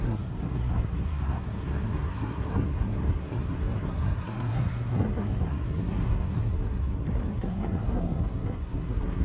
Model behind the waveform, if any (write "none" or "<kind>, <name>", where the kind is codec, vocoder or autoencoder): codec, SNAC